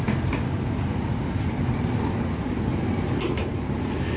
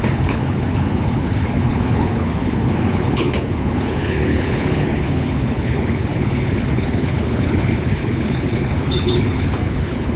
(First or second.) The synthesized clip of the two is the second